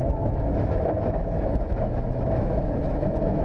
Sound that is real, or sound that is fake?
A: fake